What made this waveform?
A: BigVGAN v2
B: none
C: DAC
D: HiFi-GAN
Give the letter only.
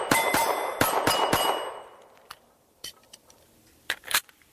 A